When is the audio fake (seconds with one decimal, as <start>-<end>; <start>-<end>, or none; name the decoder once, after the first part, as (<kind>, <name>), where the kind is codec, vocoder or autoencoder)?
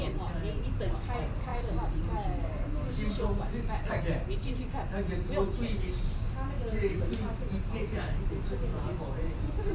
8.7-9.7 (vocoder, Vocos)